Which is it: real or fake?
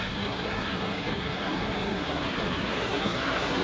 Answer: fake